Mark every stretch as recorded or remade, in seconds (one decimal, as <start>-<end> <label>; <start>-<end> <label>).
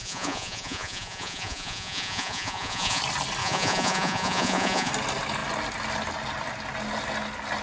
0.0-3.0 remade; 3.0-3.4 recorded; 3.4-4.9 remade; 4.9-7.6 recorded